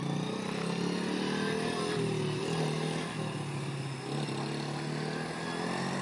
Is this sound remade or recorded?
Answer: recorded